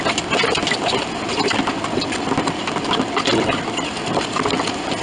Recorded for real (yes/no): yes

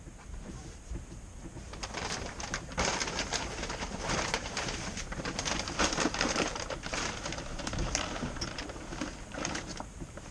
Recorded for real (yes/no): no